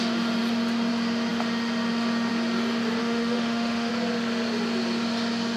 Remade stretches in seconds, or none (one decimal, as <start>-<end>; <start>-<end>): 3.0-3.9